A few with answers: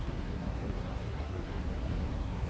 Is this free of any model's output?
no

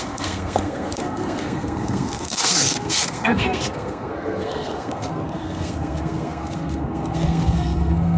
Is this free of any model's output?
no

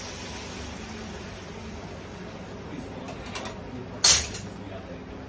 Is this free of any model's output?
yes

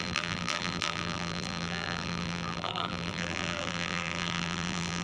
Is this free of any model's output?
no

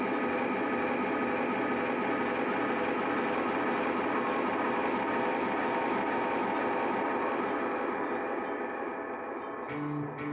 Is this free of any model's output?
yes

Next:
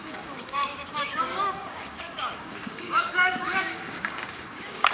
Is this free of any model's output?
no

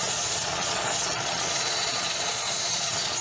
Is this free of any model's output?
no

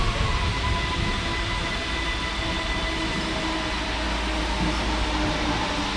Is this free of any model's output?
yes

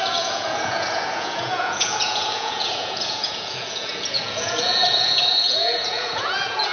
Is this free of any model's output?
no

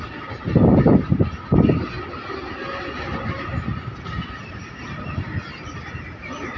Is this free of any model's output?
yes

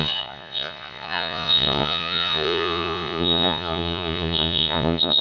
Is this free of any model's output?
no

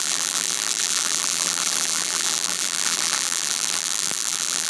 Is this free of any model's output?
no